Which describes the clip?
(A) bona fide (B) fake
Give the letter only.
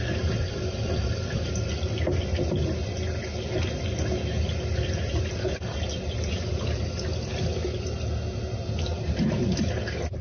A